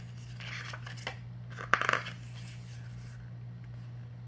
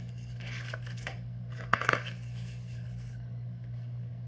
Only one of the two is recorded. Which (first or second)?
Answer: first